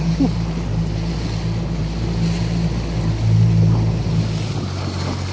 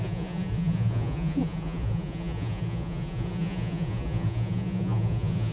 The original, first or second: first